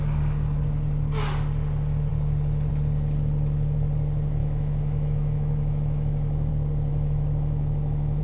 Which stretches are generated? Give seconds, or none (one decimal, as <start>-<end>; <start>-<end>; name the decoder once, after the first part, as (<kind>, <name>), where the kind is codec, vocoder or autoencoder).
4.4-6.5 (autoencoder, DAC-VAE); 6.9-8.2